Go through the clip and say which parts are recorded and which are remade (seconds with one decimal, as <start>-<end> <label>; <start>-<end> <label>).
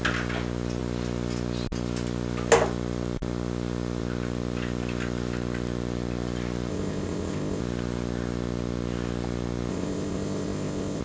0.0-6.7 recorded; 6.7-7.6 remade; 7.6-9.7 recorded; 9.7-11.0 remade